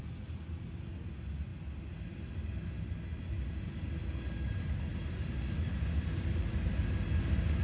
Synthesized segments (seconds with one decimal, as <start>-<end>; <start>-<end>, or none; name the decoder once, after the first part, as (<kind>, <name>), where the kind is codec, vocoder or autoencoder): none